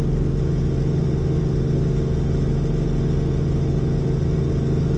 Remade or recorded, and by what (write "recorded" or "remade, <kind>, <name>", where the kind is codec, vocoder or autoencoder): recorded